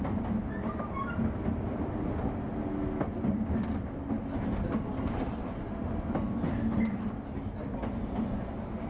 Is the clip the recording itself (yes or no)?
yes